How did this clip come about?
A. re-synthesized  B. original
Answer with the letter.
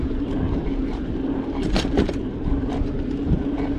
A